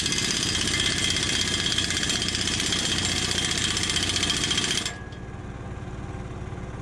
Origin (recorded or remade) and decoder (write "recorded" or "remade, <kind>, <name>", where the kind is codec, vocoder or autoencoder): recorded